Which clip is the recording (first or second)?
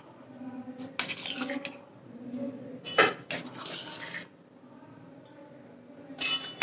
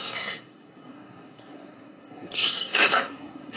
first